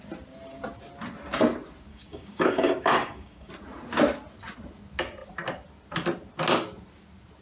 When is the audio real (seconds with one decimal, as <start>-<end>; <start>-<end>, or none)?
0.0-1.9; 3.5-7.4